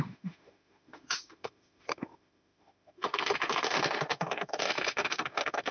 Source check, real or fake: fake